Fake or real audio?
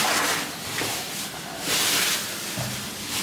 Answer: real